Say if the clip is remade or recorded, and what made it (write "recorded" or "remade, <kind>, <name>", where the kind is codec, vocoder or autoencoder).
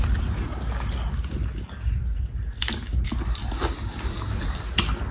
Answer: recorded